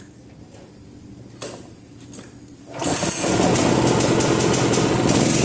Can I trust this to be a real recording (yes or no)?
yes